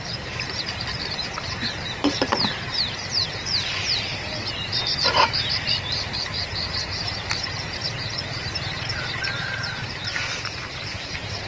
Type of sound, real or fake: fake